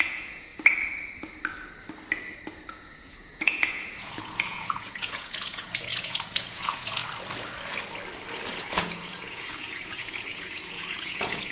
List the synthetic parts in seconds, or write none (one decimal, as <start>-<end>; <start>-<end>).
0.0-0.5; 2.7-7.0; 8.6-11.5